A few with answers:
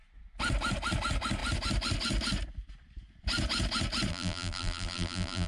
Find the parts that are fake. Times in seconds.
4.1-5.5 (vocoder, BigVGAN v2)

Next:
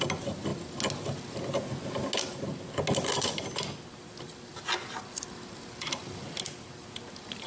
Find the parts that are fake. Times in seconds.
none